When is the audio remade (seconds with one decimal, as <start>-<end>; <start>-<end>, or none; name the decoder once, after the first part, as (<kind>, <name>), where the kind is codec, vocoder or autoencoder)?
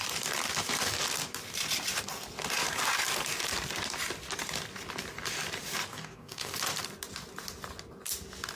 5.9-6.5 (codec, DAC)